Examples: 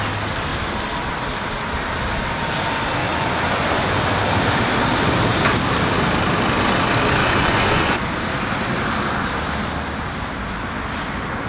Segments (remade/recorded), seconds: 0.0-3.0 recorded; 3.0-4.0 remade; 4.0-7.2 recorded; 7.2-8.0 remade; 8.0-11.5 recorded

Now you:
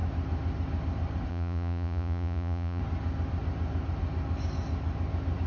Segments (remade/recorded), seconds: 0.0-1.3 recorded; 1.3-2.8 remade; 2.8-5.5 recorded

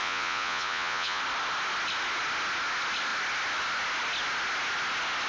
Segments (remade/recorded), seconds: 0.0-1.2 remade; 1.2-5.3 recorded

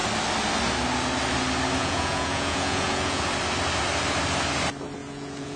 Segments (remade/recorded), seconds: 0.0-1.8 recorded; 1.8-3.2 remade; 3.2-5.0 recorded; 5.0-5.6 remade

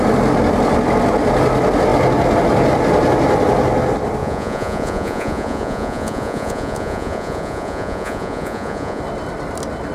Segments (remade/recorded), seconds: 0.0-4.2 recorded; 4.2-9.0 remade; 9.0-9.9 recorded